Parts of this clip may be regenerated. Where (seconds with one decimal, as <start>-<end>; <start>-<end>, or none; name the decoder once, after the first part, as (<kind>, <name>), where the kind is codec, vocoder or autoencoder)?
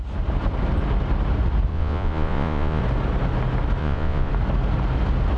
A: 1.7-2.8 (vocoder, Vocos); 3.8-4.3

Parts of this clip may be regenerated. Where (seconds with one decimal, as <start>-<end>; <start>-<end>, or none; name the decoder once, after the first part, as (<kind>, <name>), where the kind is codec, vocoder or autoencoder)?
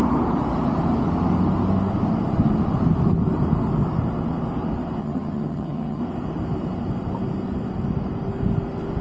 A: 5.0-6.0 (vocoder, HiFi-GAN)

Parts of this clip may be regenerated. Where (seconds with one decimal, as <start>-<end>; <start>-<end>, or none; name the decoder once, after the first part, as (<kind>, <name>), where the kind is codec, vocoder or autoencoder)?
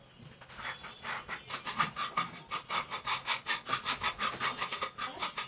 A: none